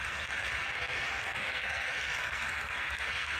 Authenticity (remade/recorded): remade